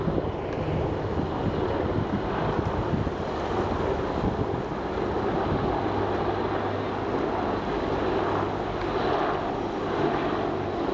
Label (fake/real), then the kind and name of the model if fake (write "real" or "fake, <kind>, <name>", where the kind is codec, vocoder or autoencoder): real